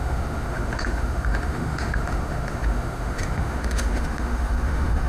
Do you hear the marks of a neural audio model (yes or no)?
yes